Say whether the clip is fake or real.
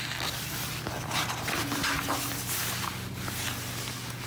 real